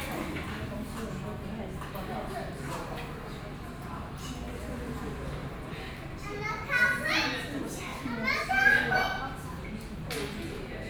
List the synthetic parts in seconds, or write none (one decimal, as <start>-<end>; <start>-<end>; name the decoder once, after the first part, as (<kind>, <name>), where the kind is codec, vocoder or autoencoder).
5.4-6.2 (vocoder, BigVGAN v2)